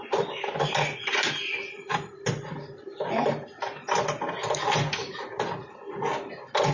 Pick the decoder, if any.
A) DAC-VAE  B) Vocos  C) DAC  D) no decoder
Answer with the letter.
D